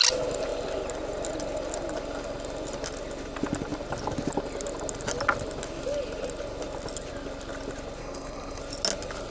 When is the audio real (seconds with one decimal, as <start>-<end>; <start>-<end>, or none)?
0.0-8.0; 8.6-9.3